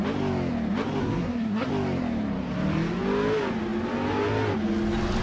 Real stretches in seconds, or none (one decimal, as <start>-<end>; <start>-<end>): 0.0-1.0; 1.7-5.2